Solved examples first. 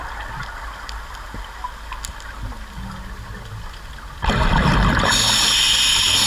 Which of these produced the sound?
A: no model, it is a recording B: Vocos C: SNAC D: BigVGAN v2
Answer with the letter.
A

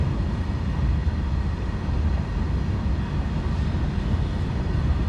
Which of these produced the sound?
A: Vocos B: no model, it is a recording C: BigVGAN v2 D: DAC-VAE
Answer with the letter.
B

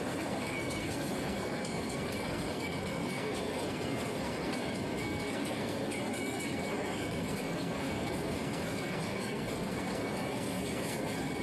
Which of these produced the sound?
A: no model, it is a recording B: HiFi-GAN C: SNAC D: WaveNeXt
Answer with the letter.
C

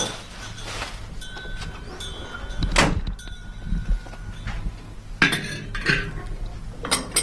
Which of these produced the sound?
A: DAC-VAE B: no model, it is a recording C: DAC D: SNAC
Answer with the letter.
B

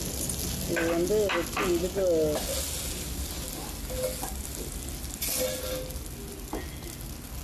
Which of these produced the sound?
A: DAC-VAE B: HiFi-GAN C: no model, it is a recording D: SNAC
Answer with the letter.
C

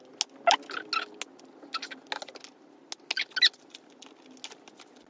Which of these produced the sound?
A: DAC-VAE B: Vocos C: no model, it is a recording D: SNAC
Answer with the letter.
C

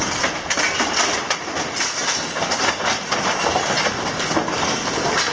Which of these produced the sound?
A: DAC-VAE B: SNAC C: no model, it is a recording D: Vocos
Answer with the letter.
C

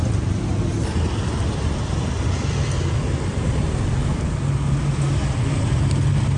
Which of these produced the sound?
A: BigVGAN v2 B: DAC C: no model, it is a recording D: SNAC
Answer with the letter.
C